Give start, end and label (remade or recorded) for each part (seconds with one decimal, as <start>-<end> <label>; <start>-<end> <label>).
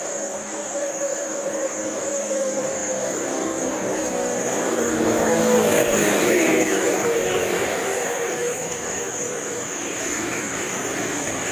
0.0-11.5 remade